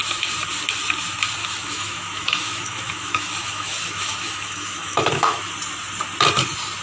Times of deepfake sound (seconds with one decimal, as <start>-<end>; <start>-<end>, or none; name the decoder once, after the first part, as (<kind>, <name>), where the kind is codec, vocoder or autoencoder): 1.4-5.5 (autoencoder, DAC-VAE)